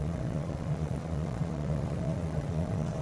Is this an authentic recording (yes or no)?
no